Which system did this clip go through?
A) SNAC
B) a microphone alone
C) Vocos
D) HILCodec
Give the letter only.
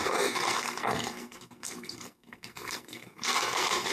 A